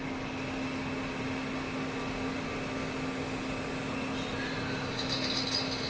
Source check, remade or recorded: recorded